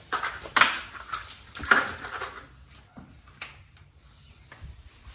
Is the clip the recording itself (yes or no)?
no